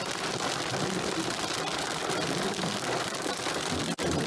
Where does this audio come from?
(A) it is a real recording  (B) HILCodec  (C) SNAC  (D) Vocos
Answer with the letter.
A